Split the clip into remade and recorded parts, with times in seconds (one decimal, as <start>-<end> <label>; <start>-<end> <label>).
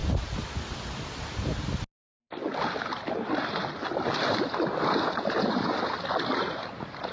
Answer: 0.0-4.3 recorded; 4.3-7.1 remade